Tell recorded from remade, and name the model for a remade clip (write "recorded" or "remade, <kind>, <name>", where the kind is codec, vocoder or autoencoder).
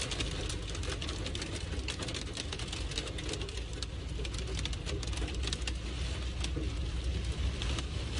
recorded